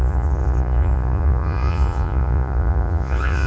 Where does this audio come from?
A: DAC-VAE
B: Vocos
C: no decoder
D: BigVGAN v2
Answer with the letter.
B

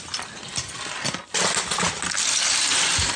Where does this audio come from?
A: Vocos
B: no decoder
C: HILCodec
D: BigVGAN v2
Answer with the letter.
B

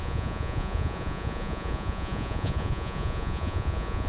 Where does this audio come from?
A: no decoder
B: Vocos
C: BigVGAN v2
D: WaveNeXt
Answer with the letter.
B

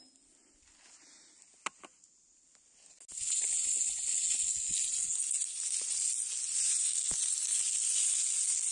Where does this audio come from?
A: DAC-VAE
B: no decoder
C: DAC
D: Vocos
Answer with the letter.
B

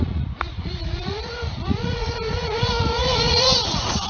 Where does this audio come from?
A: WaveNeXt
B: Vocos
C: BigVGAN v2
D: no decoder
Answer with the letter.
B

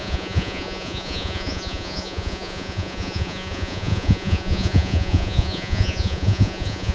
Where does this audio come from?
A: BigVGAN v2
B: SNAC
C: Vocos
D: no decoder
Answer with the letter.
C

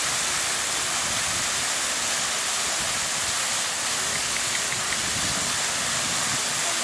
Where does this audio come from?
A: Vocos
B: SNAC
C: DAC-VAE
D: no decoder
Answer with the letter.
D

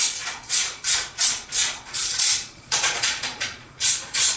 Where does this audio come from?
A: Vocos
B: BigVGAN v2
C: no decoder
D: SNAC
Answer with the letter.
A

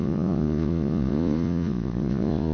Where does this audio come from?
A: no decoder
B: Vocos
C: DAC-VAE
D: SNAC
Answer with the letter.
B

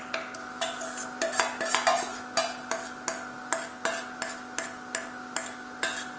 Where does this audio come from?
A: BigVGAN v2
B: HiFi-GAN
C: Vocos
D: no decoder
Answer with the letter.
D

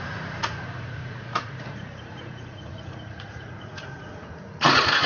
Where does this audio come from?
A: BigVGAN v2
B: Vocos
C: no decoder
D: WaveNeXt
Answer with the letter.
B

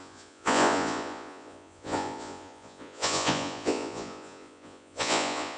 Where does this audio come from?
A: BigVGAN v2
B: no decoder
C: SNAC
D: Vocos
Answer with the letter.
D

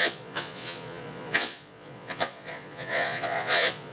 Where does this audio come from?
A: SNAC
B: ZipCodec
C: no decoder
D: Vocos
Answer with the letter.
D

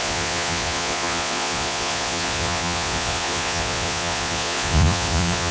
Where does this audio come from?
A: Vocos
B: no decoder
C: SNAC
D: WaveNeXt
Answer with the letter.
A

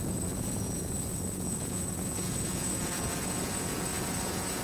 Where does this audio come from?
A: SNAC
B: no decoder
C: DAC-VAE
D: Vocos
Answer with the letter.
D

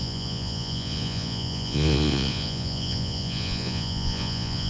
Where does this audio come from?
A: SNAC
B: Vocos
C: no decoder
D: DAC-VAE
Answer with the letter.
B